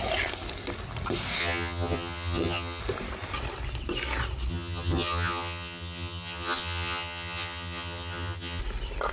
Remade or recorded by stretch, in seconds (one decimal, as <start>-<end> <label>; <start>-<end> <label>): 0.0-1.4 recorded; 1.4-2.8 remade; 2.8-4.5 recorded; 4.5-8.6 remade; 8.6-9.1 recorded